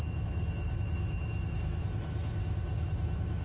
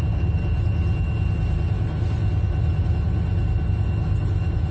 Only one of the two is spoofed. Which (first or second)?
first